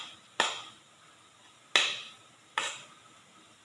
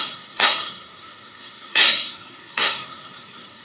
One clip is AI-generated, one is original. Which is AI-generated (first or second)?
second